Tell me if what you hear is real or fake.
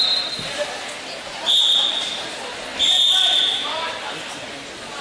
real